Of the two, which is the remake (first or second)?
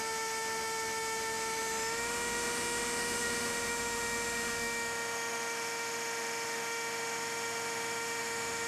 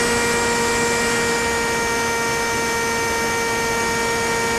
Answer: first